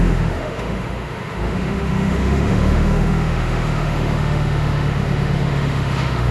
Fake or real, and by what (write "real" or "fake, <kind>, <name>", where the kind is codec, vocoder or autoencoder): fake, autoencoder, DAC-VAE